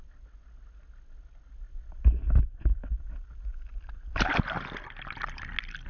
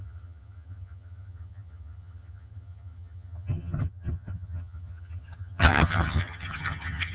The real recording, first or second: first